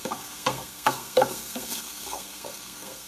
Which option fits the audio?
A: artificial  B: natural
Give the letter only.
A